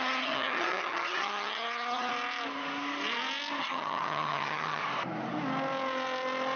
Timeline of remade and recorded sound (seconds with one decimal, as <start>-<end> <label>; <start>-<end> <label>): 0.0-2.1 remade; 2.1-3.6 recorded; 3.6-4.8 remade; 4.8-6.6 recorded